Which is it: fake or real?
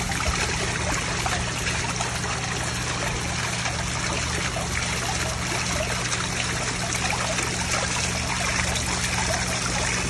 real